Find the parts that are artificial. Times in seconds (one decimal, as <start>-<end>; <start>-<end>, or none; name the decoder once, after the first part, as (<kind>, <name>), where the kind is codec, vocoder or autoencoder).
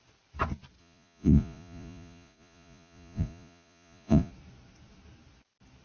0.8-4.3 (vocoder, Vocos)